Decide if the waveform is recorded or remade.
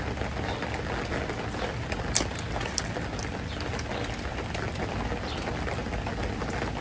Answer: recorded